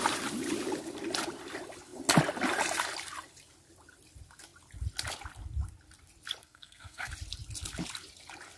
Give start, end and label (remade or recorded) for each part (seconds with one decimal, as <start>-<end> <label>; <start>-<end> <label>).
0.0-6.4 recorded; 6.4-7.1 remade; 7.1-8.6 recorded